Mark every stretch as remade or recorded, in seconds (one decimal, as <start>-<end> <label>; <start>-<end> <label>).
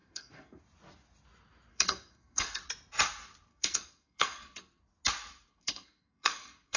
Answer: 0.0-0.6 remade; 0.6-1.7 recorded; 1.7-2.6 remade; 2.6-3.5 recorded; 3.5-4.8 remade; 4.8-5.5 recorded; 5.5-6.8 remade